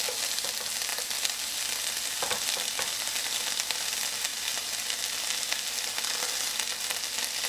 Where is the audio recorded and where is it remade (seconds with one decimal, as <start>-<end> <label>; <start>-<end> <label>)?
0.0-7.5 recorded